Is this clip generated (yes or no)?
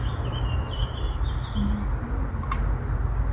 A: no